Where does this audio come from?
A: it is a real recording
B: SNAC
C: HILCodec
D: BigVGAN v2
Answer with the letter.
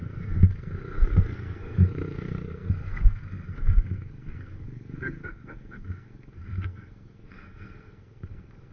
B